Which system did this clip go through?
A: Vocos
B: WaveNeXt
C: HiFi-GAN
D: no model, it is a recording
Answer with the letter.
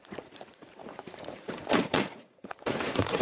A